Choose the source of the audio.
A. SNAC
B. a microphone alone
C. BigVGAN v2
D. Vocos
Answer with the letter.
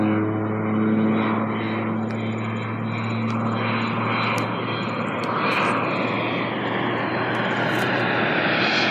B